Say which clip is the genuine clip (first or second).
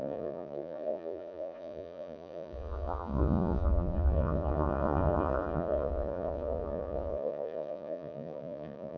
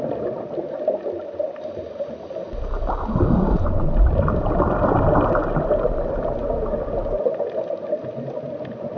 second